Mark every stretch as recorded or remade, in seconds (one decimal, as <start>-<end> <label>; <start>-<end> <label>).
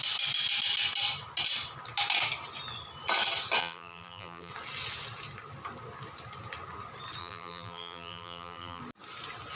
0.0-3.6 recorded; 3.6-4.5 remade; 4.5-7.2 recorded; 7.2-8.8 remade; 8.8-9.6 recorded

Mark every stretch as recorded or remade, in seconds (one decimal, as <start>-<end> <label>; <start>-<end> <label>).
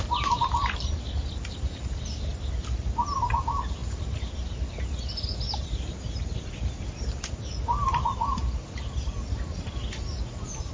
0.0-10.7 recorded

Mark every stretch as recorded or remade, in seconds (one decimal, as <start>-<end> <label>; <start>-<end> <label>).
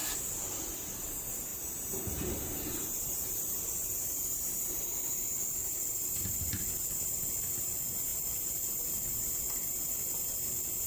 0.0-0.9 remade; 0.9-1.5 recorded; 1.5-4.8 remade; 4.8-10.9 recorded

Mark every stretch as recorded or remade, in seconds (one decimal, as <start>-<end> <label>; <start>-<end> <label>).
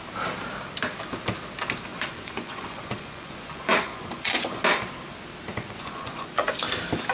0.0-1.9 recorded; 1.9-4.6 remade; 4.6-5.5 recorded; 5.5-6.6 remade; 6.6-7.1 recorded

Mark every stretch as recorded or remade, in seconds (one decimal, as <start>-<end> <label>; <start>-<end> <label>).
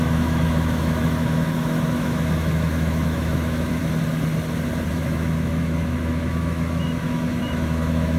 0.0-3.8 remade; 3.8-4.9 recorded; 4.9-8.2 remade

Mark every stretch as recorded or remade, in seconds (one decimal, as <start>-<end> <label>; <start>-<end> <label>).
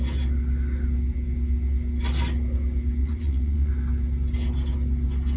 0.0-3.0 recorded; 3.0-3.7 remade; 3.7-5.4 recorded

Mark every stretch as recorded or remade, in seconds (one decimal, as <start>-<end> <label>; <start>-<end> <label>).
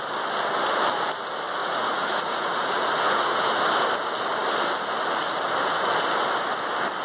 0.0-1.6 recorded; 1.6-3.6 remade; 3.6-7.0 recorded